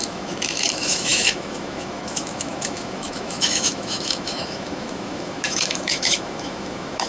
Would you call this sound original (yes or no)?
no